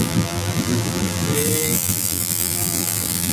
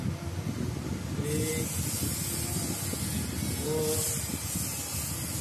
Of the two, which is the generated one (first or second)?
first